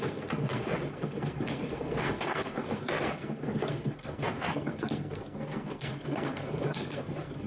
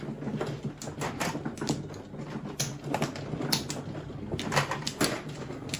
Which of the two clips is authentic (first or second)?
second